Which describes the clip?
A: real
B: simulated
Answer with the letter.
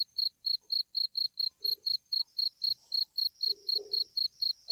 A